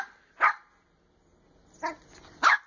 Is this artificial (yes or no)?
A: no